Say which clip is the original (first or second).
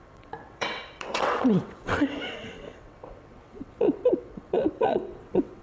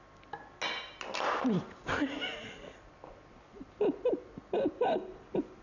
second